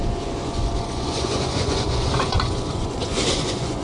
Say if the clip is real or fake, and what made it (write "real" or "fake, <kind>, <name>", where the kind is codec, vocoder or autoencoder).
fake, vocoder, Vocos